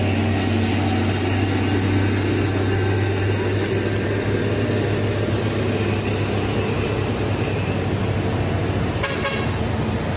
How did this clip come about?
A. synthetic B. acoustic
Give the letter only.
B